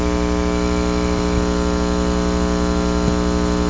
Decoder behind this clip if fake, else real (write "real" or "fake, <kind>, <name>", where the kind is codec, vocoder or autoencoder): real